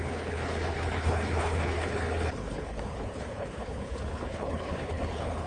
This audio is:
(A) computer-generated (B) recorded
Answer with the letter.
A